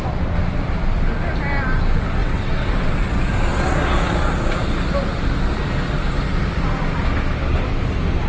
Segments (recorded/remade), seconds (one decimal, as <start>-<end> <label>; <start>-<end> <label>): 0.0-2.2 recorded; 2.2-3.1 remade; 3.1-8.3 recorded